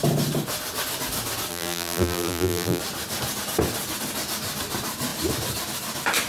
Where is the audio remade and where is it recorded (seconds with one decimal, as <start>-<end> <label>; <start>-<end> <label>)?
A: 0.0-1.5 recorded; 1.5-2.8 remade; 2.8-6.3 recorded